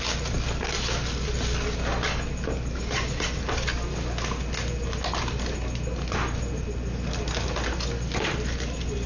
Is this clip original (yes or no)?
yes